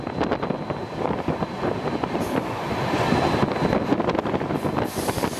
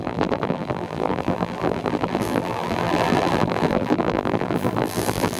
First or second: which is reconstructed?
second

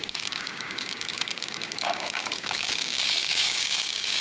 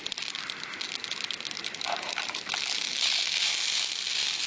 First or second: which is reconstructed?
first